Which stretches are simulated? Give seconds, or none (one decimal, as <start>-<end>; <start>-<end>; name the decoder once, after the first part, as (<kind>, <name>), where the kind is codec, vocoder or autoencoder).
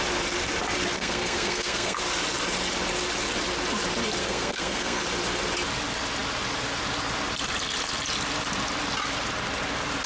1.0-2.0 (codec, SNAC); 4.2-5.0